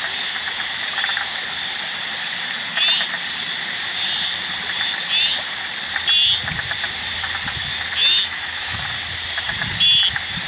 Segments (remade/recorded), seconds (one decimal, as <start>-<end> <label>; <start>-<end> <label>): 0.0-8.0 recorded; 8.0-8.8 remade; 8.8-10.5 recorded